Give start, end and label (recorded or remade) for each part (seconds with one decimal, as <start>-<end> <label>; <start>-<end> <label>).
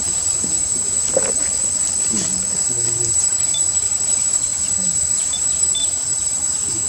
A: 0.0-0.7 remade; 0.7-3.1 recorded; 3.1-6.9 remade